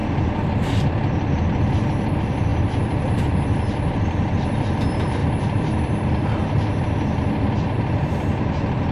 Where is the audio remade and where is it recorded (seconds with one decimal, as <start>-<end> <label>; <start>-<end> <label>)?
0.0-2.1 recorded; 2.1-6.4 remade; 6.4-8.0 recorded; 8.0-8.9 remade